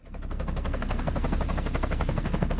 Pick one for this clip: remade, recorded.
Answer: remade